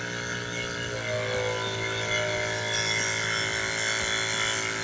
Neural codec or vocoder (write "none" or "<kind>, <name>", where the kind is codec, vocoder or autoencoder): none